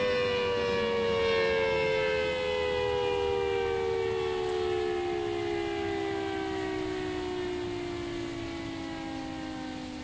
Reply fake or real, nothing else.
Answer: real